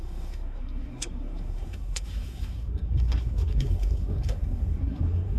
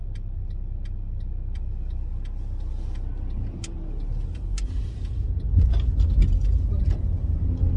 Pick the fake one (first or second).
first